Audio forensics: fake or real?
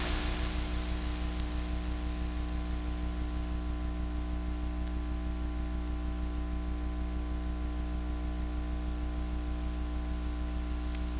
real